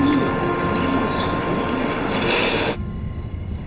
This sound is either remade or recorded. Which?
recorded